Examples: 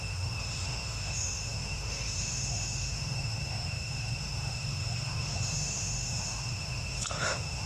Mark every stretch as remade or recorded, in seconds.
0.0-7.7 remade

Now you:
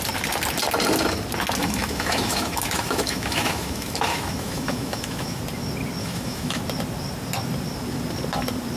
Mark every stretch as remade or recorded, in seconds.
0.0-1.6 recorded; 1.6-5.4 remade; 5.4-6.0 recorded; 6.0-6.6 remade; 6.6-8.8 recorded

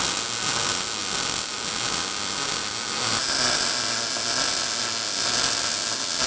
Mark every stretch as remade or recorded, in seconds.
0.0-6.3 recorded